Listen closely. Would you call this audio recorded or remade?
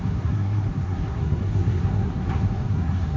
remade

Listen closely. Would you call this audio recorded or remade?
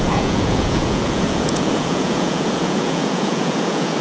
remade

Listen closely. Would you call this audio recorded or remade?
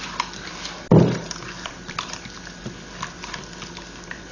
remade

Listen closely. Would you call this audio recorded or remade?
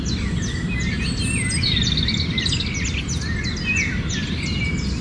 recorded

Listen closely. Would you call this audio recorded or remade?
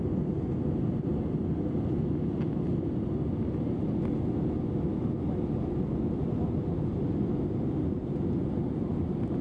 recorded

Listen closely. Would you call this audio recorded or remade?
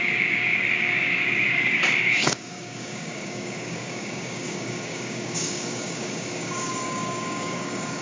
remade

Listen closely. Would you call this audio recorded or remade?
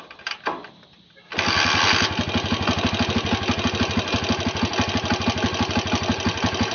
recorded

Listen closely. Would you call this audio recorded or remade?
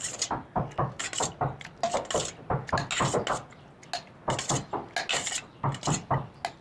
recorded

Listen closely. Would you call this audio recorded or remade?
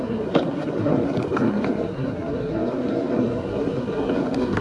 remade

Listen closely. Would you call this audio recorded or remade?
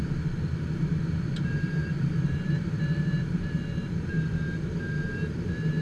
remade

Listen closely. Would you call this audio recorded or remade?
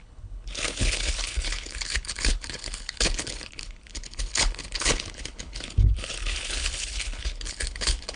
remade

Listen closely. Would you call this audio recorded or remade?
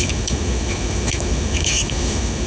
remade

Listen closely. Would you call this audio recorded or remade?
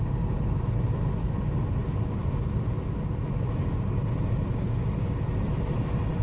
recorded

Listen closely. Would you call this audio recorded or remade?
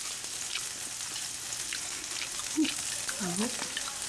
recorded